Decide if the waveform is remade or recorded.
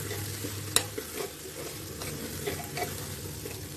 recorded